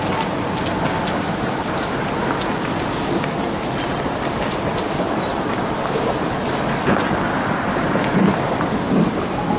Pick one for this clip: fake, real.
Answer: real